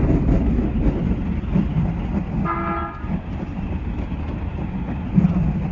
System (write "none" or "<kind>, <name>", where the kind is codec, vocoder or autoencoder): none